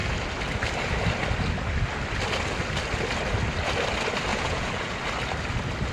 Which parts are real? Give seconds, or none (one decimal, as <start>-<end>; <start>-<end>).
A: 0.0-4.3; 5.0-5.9